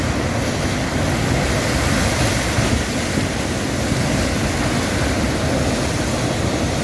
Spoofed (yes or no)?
no